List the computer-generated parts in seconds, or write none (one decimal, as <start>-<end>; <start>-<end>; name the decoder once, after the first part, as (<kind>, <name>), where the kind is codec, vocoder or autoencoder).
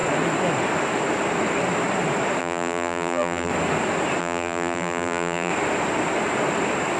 2.4-3.5 (vocoder, BigVGAN v2); 4.2-5.5